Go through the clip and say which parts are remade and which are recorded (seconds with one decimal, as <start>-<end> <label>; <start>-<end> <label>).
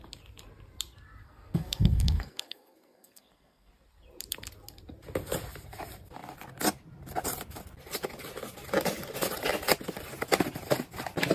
0.0-1.2 recorded; 1.2-3.7 remade; 3.7-11.3 recorded